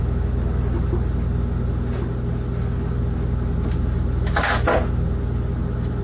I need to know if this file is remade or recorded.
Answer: recorded